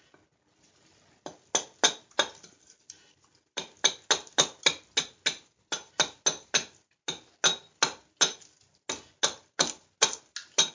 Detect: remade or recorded recorded